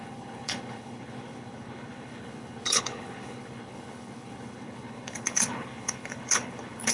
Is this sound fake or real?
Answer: fake